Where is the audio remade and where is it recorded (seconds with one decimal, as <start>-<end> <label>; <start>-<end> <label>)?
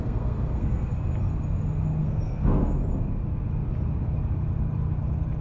0.0-1.0 remade; 1.0-2.0 recorded; 2.0-2.8 remade; 2.8-5.4 recorded